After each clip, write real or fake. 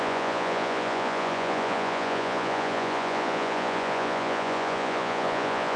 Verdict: fake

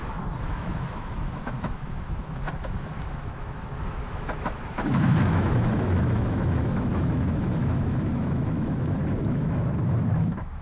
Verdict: fake